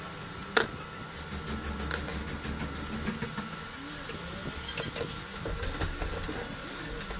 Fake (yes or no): no